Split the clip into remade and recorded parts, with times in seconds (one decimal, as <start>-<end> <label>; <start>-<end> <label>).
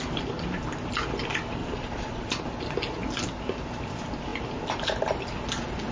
0.0-1.6 recorded; 1.6-2.3 remade; 2.3-5.9 recorded